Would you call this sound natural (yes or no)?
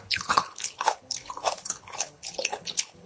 no